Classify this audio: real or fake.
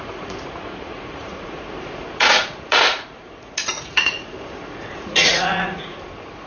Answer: fake